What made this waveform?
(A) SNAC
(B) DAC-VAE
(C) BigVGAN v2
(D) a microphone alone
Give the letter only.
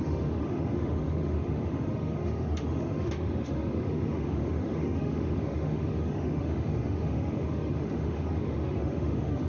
B